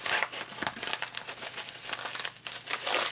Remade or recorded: recorded